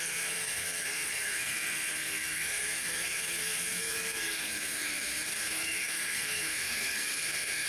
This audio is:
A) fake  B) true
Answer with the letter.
A